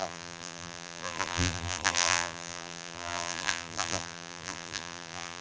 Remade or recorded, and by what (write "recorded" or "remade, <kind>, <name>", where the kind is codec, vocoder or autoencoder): remade, vocoder, BigVGAN v2